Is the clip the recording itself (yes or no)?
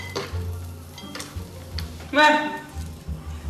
yes